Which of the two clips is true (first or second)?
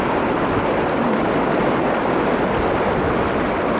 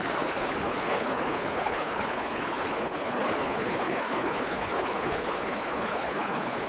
first